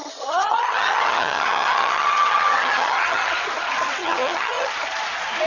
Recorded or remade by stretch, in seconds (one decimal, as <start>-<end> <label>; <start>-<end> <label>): 0.0-3.3 remade; 3.3-4.0 recorded; 4.0-4.7 remade; 4.7-5.5 recorded